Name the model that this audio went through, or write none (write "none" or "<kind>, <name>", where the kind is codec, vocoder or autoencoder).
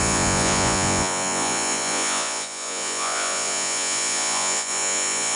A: vocoder, Vocos